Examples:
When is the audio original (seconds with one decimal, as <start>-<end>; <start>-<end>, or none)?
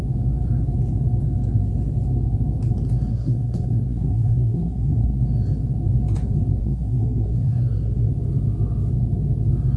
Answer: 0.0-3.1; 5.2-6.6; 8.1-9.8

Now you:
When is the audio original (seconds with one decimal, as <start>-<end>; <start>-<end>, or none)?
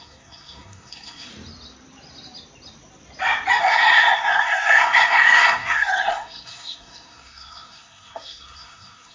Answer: 1.3-3.6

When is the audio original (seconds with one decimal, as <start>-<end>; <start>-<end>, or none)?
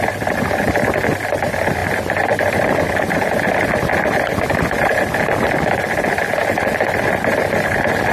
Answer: 0.0-8.1